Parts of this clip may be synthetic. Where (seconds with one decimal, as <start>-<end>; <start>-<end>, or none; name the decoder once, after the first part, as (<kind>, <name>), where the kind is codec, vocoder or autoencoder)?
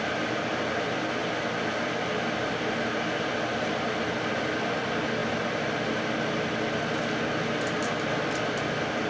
none